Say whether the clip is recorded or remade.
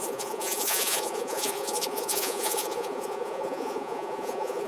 remade